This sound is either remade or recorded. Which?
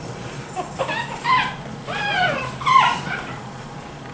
remade